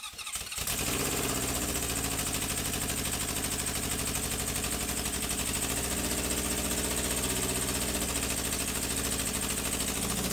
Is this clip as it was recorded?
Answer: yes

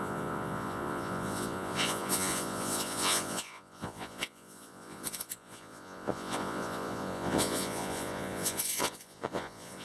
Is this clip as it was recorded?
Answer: no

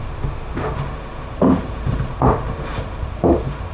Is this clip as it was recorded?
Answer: no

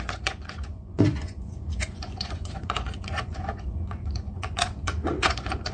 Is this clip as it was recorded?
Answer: no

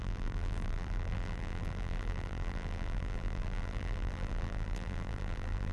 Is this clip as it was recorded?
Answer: no